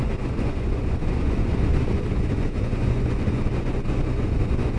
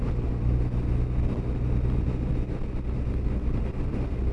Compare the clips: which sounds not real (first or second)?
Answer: first